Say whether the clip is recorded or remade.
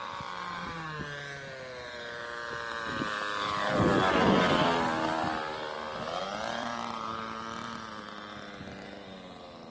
remade